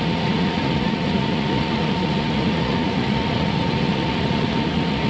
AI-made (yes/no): yes